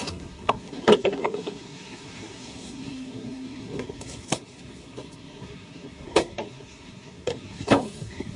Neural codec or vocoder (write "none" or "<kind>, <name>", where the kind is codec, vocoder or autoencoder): codec, SNAC